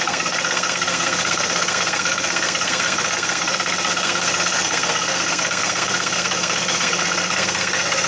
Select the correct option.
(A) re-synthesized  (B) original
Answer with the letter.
A